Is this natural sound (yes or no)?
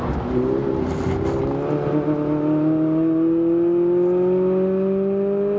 yes